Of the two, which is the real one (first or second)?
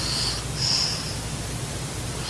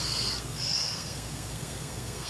first